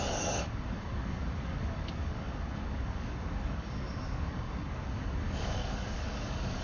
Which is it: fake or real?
fake